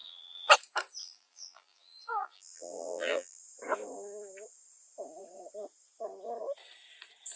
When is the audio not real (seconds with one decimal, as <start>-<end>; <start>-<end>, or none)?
0.0-0.5; 1.0-3.4